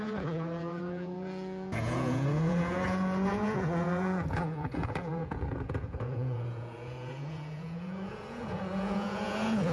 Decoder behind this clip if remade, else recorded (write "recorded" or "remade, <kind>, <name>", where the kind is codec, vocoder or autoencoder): remade, vocoder, Vocos